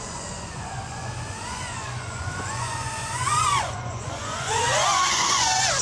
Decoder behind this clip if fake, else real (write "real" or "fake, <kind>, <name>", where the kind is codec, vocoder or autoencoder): fake, vocoder, Vocos